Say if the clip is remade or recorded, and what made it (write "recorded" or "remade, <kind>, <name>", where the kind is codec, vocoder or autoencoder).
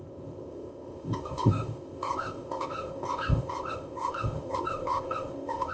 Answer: remade, codec, ZipCodec